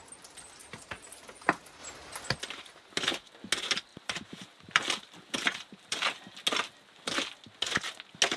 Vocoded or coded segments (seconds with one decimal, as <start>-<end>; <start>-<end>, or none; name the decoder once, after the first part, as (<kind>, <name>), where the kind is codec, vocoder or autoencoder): 3.9-6.4 (vocoder, BigVGAN v2)